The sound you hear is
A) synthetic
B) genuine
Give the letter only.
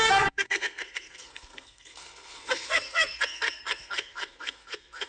A